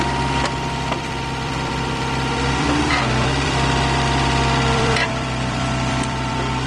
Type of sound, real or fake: fake